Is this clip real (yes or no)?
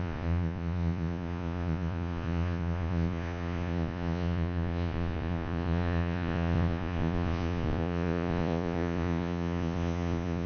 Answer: no